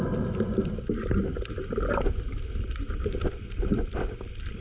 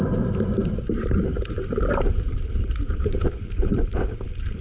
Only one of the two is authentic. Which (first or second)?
first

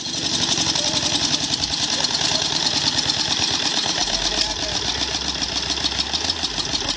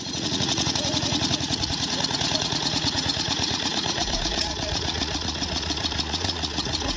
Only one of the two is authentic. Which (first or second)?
first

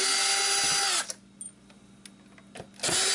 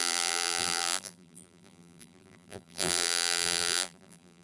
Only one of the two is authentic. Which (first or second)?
first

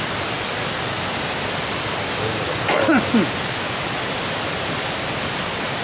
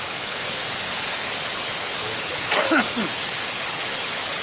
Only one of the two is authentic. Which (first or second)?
first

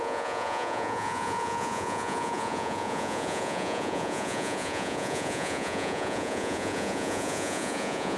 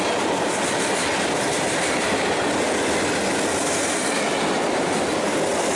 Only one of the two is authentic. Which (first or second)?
second